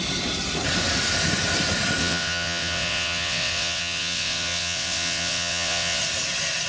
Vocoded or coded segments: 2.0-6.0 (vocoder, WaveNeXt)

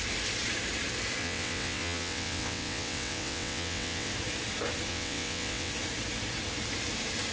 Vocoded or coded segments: 1.2-4.1 (vocoder, WaveNeXt); 4.9-5.7

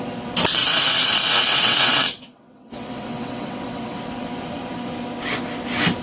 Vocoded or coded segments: 0.6-4.0 (vocoder, WaveNeXt)

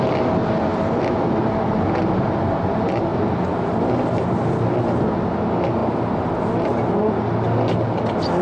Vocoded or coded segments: none

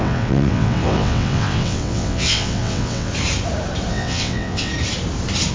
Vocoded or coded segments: 0.0-3.1 (vocoder, WaveNeXt); 3.9-4.7

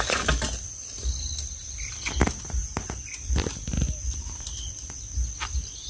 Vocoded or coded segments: none